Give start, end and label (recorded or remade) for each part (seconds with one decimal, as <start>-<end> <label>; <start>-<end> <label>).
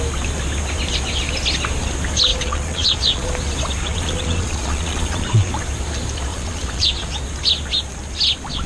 0.0-2.3 recorded; 2.3-3.3 remade; 3.3-3.8 recorded; 3.8-5.5 remade; 5.5-6.3 recorded; 6.3-7.1 remade; 7.1-8.7 recorded